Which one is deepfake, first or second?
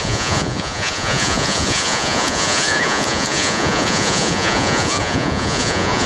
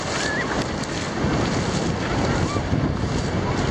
first